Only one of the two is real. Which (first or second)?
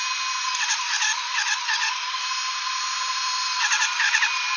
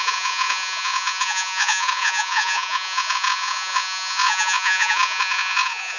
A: first